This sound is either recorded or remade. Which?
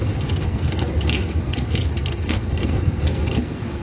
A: remade